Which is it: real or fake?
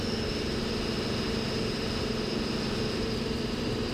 real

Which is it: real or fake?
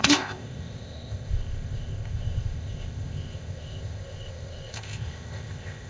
fake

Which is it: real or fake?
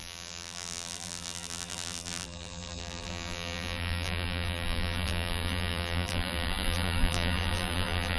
fake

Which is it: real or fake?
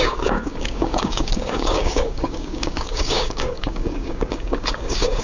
fake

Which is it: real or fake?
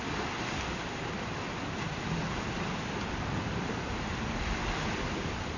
fake